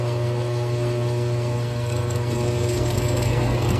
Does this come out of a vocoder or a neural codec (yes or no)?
yes